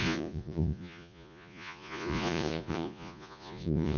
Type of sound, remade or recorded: remade